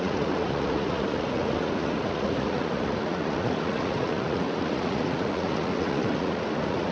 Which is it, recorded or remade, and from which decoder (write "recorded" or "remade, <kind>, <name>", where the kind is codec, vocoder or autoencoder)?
remade, vocoder, Vocos